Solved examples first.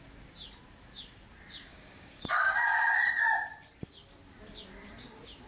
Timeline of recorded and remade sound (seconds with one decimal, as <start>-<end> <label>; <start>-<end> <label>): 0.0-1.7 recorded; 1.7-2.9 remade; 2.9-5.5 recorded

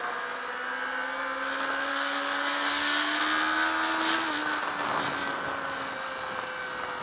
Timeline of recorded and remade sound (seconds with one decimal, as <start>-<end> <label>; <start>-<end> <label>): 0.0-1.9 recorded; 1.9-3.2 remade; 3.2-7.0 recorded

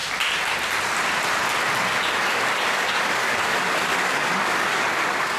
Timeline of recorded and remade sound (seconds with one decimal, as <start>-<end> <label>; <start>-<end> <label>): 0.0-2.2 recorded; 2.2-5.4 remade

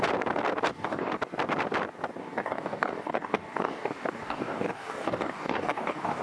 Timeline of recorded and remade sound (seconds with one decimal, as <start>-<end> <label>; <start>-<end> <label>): 0.0-0.7 recorded; 0.7-1.2 remade; 1.2-2.2 recorded; 2.2-6.2 remade

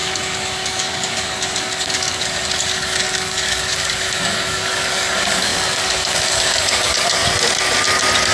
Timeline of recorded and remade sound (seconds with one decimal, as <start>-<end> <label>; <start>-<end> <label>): 0.0-7.2 remade; 7.2-8.3 recorded

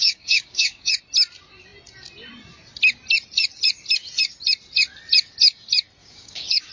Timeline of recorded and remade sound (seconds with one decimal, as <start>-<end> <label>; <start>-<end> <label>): 0.0-0.9 remade; 0.9-6.0 recorded; 6.0-6.7 remade